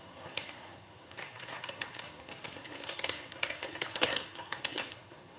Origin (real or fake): fake